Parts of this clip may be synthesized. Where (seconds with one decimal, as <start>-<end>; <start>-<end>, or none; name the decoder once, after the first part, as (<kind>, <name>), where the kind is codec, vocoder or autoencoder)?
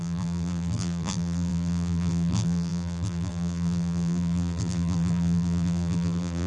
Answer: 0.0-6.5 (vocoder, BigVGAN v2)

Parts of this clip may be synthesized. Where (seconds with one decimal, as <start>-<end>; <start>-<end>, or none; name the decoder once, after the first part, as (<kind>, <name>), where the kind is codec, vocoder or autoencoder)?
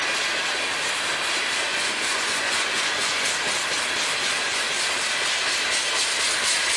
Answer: 1.7-3.3 (vocoder, Vocos); 4.2-4.7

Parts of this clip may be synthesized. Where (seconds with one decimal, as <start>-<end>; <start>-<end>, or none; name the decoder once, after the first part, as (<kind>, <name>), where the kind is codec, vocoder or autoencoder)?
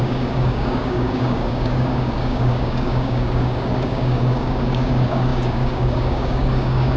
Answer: 0.0-7.0 (codec, DAC)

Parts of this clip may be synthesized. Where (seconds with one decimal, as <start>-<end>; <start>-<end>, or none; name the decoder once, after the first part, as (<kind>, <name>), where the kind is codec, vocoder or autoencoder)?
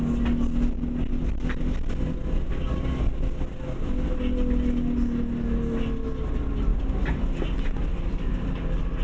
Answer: none